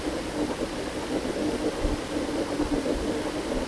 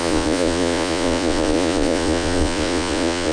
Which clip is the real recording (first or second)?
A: first